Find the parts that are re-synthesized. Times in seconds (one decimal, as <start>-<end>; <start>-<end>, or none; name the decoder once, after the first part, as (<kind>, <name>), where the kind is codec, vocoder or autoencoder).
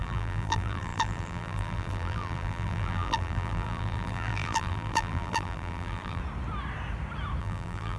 0.0-6.2 (vocoder, BigVGAN v2); 7.4-8.0